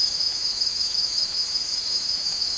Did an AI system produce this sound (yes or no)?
yes